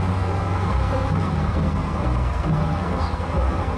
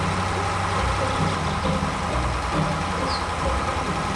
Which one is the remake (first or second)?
first